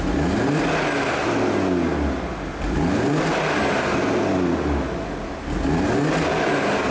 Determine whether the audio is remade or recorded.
recorded